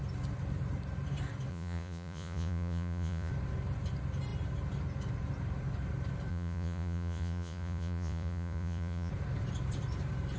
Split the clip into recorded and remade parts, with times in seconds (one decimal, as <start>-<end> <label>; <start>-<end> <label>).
0.0-1.5 recorded; 1.5-3.3 remade; 3.3-6.3 recorded; 6.3-9.1 remade; 9.1-10.4 recorded